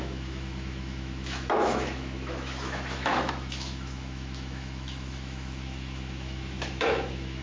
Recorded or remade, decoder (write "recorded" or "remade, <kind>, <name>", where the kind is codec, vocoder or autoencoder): remade, autoencoder, DAC-VAE